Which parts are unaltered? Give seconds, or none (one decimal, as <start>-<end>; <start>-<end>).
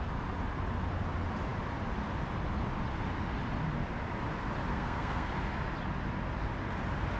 0.0-4.7; 5.3-7.2